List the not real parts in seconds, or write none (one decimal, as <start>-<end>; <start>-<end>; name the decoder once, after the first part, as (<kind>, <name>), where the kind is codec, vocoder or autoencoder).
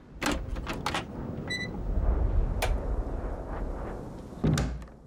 none